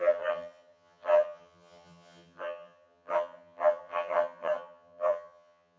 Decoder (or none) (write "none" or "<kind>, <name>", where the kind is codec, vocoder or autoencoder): vocoder, HiFi-GAN